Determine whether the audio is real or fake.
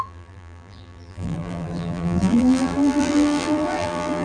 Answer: fake